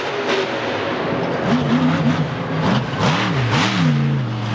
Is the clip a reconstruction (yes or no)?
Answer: no